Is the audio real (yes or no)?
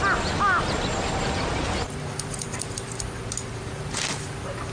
yes